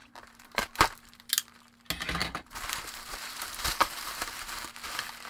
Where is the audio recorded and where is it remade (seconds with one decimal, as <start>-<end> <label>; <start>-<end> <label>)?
0.0-0.9 remade; 0.9-2.2 recorded; 2.2-4.7 remade; 4.7-5.3 recorded